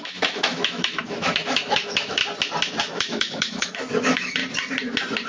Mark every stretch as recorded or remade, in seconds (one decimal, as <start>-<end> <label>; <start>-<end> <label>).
0.0-2.2 remade; 2.2-2.8 recorded; 2.8-4.4 remade; 4.4-5.3 recorded